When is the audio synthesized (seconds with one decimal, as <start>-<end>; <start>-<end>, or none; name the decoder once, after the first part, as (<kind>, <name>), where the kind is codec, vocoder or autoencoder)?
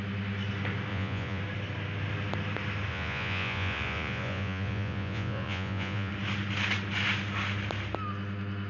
0.9-1.4 (vocoder, Vocos); 2.9-6.1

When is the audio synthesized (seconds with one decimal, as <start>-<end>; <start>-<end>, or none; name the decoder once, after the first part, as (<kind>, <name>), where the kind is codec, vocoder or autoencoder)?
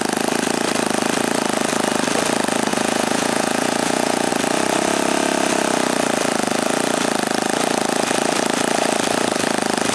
2.7-4.3 (vocoder, Vocos)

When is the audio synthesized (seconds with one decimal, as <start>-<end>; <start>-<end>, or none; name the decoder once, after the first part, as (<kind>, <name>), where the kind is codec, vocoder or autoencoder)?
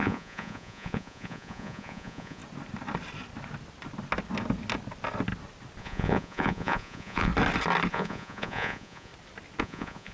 0.0-2.4 (vocoder, Vocos); 5.8-7.3; 7.9-9.1; 9.6-10.1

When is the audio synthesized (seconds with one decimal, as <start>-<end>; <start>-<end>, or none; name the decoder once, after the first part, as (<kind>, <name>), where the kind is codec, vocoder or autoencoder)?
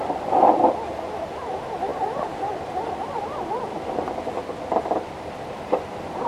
none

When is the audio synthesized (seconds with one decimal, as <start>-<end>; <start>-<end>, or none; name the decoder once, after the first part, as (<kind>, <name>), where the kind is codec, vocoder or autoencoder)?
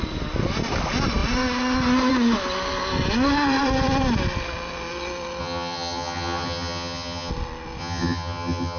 5.4-7.3 (vocoder, HiFi-GAN); 7.8-8.8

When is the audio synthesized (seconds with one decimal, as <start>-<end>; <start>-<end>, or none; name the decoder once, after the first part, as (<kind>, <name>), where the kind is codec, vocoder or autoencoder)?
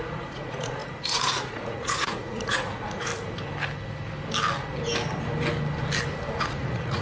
0.0-3.1 (vocoder, Vocos); 6.4-7.0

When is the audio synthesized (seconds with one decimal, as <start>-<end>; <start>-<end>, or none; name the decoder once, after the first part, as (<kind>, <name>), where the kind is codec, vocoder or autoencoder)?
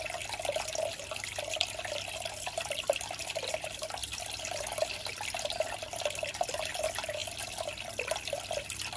none